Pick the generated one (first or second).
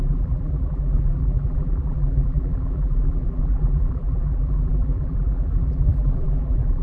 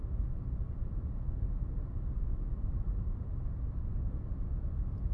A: first